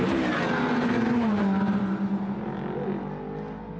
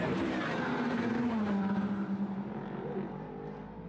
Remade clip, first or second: second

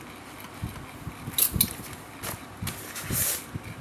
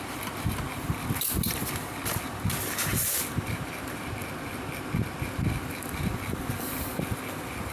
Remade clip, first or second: second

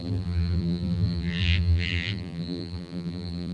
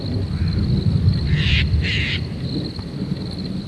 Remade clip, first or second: first